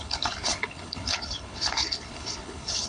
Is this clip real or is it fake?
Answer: fake